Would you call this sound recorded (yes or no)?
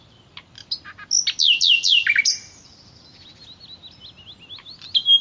yes